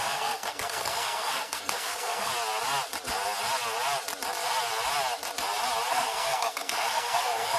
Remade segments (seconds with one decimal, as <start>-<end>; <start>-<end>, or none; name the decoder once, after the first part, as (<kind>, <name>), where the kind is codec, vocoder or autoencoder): 0.0-2.3 (codec, SNAC); 5.9-7.6